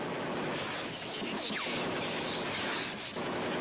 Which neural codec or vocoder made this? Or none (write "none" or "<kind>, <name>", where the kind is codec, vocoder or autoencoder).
autoencoder, DAC-VAE